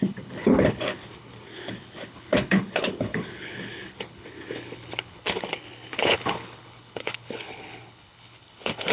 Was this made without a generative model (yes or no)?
no